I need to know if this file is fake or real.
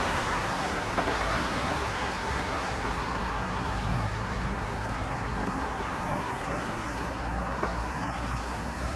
fake